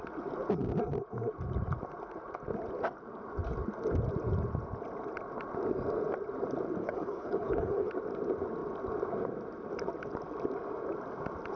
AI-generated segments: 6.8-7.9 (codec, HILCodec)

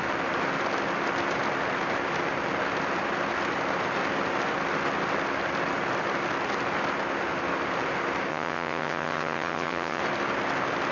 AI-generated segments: 8.3-10.0 (vocoder, HiFi-GAN)

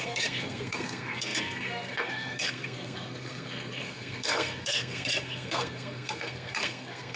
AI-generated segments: 0.0-7.2 (codec, SNAC)